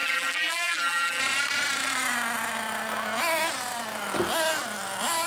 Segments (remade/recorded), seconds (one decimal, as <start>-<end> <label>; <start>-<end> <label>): 0.0-1.2 remade; 1.2-5.3 recorded